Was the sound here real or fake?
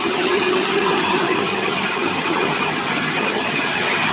fake